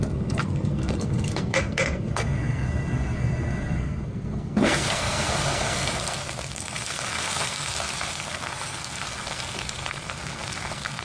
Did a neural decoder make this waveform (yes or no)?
yes